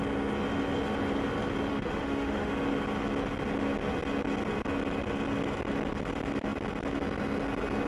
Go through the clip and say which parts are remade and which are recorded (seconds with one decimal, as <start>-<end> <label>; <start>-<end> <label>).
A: 0.0-1.7 recorded; 1.7-2.5 remade; 2.5-7.9 recorded